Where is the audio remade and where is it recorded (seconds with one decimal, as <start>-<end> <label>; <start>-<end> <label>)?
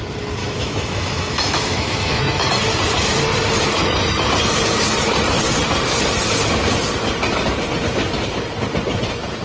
0.0-0.4 recorded; 0.4-2.5 remade; 2.5-3.8 recorded; 3.8-4.3 remade; 4.3-9.4 recorded